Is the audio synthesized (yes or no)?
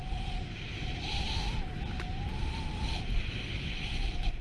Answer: no